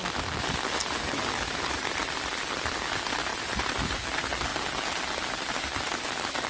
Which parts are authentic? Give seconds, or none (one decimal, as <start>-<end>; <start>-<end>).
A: 0.0-6.5